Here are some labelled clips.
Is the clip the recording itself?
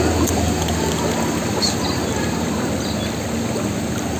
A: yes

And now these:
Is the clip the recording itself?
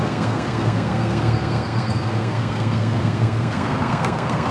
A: no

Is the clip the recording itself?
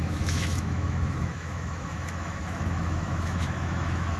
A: no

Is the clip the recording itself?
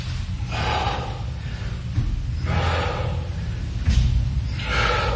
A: yes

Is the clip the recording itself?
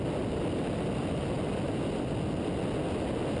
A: yes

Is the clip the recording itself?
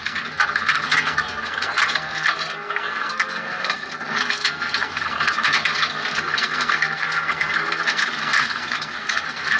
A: no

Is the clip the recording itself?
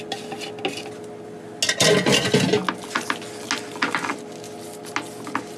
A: yes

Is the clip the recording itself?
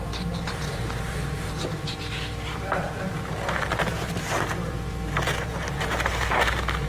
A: no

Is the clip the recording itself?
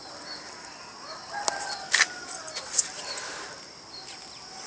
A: yes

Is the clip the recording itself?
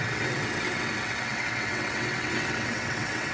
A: no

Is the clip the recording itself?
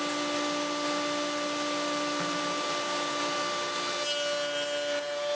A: yes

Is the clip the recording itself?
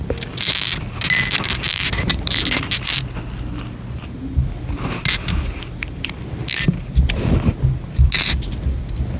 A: yes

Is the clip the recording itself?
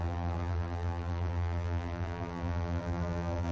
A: no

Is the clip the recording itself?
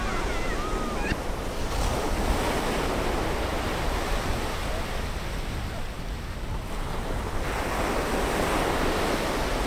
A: yes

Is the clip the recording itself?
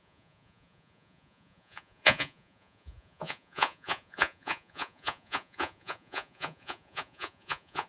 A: no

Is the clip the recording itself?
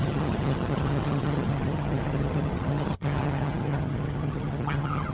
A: no